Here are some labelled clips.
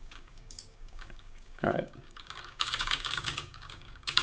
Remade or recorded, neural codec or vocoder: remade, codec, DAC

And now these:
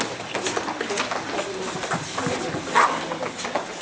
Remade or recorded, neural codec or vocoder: recorded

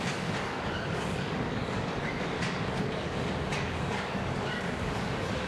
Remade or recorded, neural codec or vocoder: remade, codec, DAC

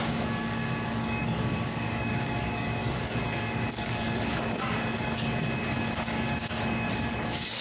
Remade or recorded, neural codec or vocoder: remade, codec, DAC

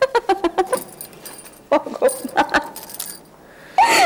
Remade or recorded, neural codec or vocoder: recorded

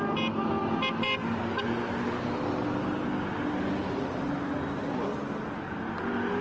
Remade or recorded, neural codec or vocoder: recorded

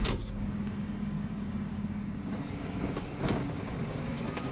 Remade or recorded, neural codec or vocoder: remade, codec, DAC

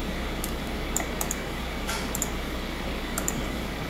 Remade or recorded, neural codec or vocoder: remade, codec, DAC